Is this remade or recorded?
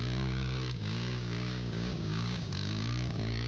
remade